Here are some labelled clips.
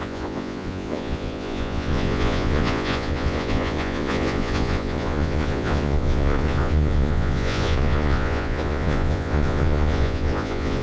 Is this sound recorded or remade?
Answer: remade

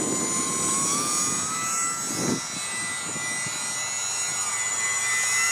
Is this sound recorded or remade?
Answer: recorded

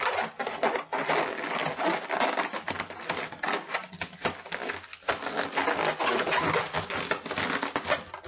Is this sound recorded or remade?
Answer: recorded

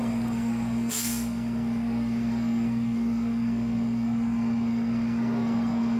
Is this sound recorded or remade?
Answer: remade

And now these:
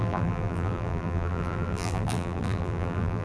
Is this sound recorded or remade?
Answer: remade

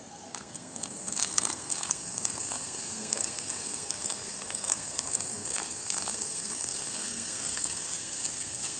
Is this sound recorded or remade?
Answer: remade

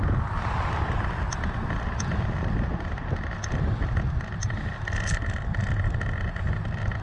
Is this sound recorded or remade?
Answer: recorded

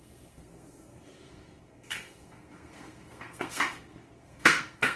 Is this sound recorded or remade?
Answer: remade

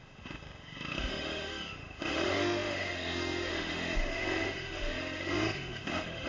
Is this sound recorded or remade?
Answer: remade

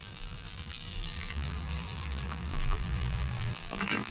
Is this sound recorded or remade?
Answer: remade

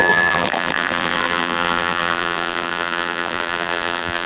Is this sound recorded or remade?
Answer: remade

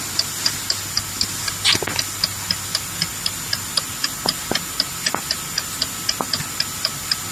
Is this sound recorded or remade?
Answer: remade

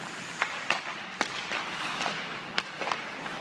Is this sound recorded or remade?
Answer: recorded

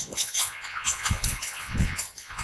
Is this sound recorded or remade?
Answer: remade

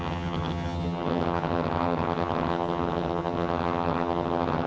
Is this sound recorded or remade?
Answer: remade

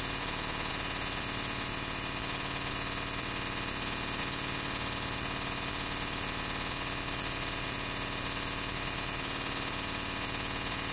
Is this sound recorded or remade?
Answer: recorded